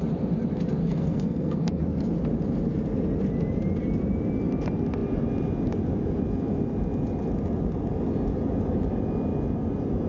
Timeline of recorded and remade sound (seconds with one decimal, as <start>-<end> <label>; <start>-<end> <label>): 0.0-0.8 recorded; 0.8-1.8 remade; 1.8-10.1 recorded